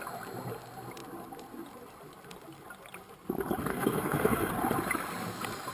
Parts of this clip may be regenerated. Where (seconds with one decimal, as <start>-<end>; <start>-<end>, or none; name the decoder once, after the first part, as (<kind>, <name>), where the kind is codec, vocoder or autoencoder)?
3.7-4.5 (codec, SNAC)